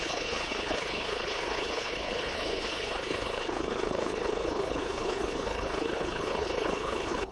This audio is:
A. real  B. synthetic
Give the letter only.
B